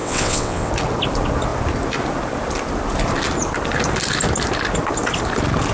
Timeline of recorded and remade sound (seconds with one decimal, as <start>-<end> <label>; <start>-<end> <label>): 0.0-0.7 remade; 0.7-5.7 recorded